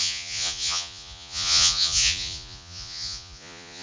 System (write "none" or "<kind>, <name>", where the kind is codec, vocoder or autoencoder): vocoder, Vocos